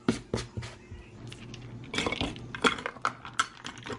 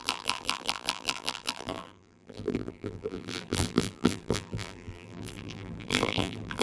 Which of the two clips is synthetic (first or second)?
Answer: second